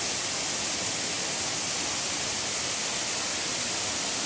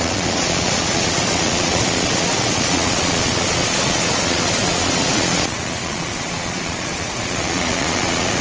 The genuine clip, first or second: first